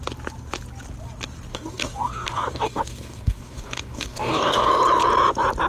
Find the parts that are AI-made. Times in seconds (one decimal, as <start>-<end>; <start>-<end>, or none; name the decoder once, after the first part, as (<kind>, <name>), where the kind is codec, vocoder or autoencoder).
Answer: 1.5-4.7 (codec, DAC)